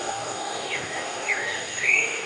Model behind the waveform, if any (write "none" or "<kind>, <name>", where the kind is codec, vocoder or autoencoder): codec, DAC